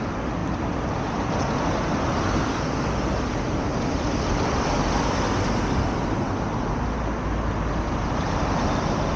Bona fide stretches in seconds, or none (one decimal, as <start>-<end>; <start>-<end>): 0.0-0.4; 1.0-3.7; 5.3-9.2

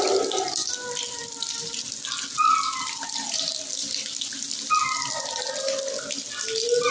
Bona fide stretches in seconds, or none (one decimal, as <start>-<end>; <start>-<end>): 0.0-6.9

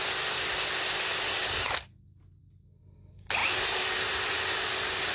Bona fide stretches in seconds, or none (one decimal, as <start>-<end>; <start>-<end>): 0.0-3.4; 4.4-5.1

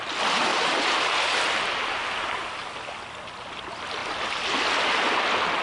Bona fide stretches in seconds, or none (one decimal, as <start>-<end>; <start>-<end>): 0.0-0.5; 1.8-5.6

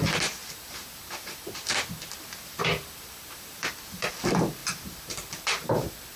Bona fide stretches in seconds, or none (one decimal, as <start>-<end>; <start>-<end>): 0.0-0.4; 4.1-4.6; 5.1-6.2

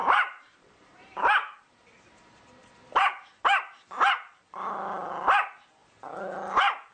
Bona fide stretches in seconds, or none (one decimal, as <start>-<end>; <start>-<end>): 1.7-6.9

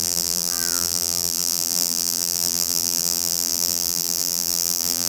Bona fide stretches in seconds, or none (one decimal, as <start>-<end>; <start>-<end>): none

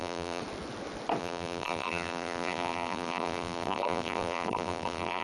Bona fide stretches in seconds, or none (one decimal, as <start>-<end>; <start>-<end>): 0.4-1.2